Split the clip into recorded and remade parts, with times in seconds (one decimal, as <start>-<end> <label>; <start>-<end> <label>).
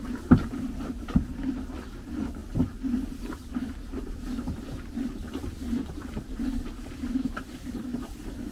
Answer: 0.0-2.4 remade; 2.4-3.2 recorded; 3.2-8.5 remade